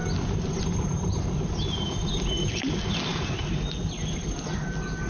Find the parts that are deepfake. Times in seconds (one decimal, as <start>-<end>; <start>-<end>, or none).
none